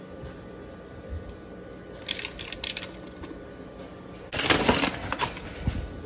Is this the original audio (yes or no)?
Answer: yes